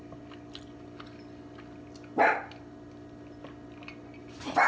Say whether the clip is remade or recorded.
recorded